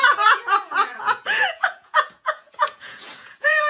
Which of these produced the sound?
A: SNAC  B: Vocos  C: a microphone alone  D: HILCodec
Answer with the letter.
B